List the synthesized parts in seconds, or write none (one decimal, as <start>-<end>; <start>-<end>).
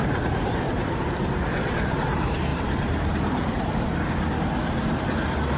0.0-1.0; 2.5-3.7